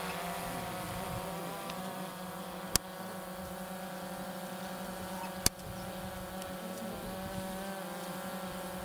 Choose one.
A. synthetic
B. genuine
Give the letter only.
B